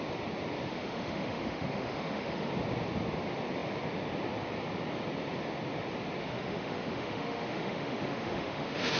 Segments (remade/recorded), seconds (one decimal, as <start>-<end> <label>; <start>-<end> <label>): 0.0-0.7 recorded; 0.7-2.5 remade; 2.5-6.2 recorded; 6.2-9.0 remade